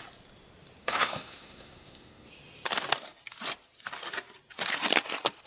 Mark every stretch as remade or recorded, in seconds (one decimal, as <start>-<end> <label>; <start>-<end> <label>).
0.0-0.8 recorded; 0.8-2.3 remade; 2.3-5.5 recorded